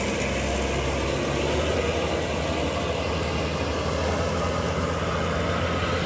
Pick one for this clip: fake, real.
real